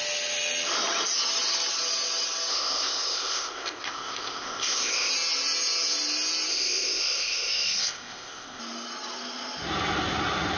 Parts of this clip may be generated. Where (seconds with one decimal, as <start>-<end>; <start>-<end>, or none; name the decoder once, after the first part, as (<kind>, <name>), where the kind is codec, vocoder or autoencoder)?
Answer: 2.5-5.1 (codec, ZipCodec); 6.5-8.6